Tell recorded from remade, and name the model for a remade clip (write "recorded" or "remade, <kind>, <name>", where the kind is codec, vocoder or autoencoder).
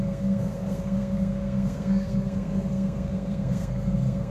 remade, codec, SNAC